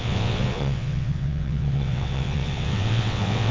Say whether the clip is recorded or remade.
remade